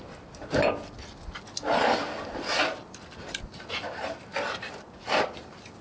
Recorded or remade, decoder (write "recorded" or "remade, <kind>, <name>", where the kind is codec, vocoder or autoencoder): recorded